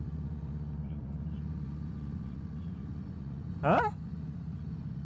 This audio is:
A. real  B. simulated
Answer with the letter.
B